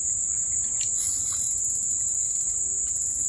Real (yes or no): yes